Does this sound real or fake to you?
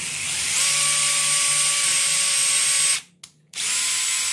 real